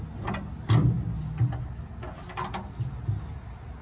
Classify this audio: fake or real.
real